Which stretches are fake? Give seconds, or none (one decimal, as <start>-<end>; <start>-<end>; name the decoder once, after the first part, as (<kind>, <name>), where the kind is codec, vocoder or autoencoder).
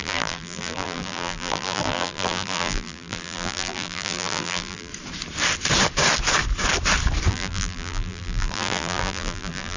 0.0-4.9 (vocoder, BigVGAN v2); 7.3-9.8